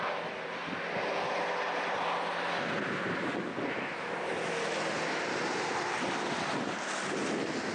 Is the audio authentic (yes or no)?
yes